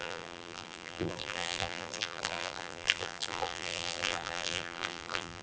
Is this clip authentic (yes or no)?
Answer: no